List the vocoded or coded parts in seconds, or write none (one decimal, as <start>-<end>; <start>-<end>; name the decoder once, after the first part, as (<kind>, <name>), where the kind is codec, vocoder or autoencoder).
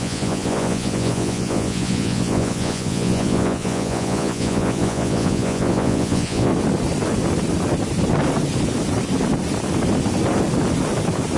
0.0-6.5 (vocoder, Vocos)